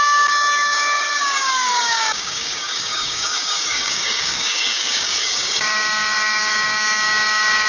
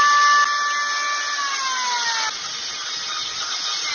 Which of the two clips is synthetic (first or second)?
first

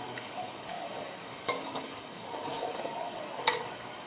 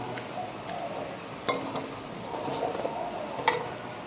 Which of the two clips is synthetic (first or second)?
first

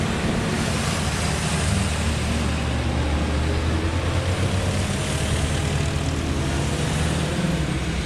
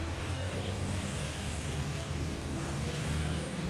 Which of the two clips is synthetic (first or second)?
second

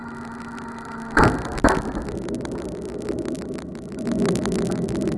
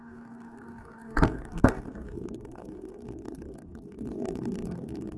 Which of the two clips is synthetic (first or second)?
second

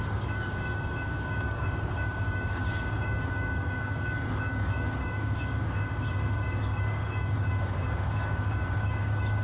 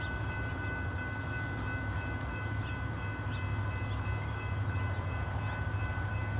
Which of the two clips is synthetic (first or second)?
first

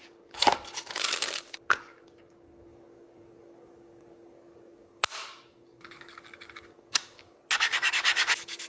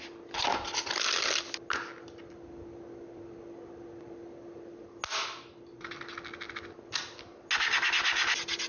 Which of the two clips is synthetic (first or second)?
first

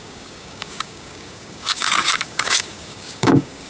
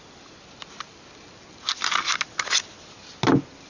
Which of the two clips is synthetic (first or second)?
first